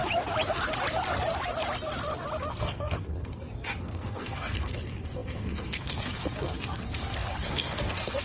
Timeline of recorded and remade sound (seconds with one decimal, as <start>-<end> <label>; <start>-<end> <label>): 0.0-2.5 recorded; 2.5-8.2 remade